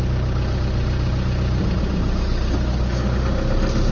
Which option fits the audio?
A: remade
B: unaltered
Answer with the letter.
B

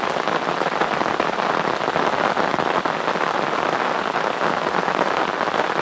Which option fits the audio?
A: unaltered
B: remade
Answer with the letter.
A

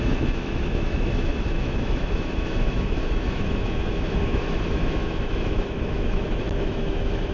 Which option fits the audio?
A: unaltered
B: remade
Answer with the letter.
B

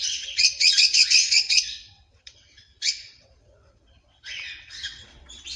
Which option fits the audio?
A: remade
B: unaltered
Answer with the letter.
A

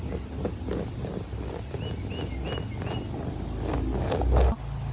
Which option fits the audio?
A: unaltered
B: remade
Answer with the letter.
A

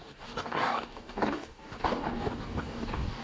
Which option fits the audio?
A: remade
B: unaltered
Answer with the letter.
A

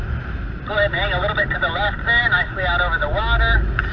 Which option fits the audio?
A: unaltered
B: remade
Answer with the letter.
A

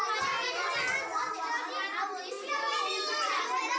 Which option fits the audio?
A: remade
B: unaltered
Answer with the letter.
B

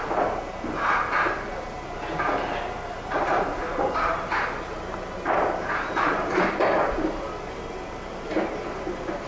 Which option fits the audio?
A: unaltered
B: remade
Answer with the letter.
A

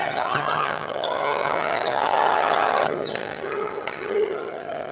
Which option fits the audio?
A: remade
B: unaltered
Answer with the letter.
A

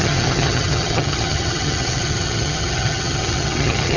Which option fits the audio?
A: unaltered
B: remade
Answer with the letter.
B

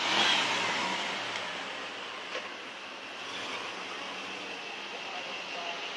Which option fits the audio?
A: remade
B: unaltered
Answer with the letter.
B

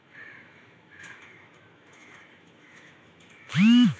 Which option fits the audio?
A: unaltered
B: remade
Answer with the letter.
B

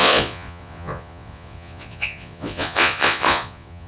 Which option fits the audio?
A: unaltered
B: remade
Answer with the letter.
B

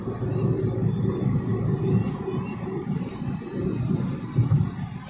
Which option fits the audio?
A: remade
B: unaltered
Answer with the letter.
B